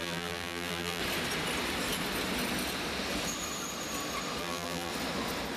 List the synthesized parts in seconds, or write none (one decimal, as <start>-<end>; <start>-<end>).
0.0-1.0; 4.4-4.9